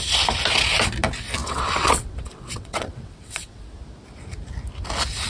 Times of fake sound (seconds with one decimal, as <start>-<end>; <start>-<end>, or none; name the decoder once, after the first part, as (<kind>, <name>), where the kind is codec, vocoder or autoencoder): 1.4-3.6 (vocoder, WaveNeXt)

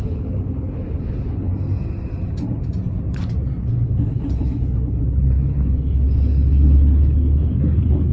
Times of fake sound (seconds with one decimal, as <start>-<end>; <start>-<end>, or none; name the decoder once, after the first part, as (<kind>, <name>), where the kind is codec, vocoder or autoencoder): 0.0-1.5 (codec, HILCodec); 3.6-8.1

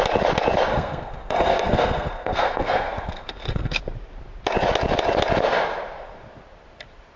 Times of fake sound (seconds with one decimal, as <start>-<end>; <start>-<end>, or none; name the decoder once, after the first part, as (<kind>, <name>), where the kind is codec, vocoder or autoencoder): 0.7-3.8 (codec, SNAC)